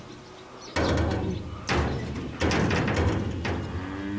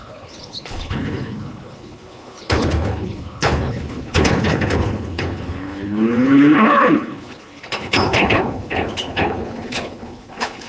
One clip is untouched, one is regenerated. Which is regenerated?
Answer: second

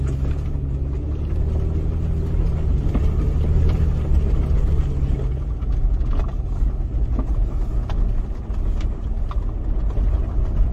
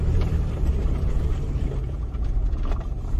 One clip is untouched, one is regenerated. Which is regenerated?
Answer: second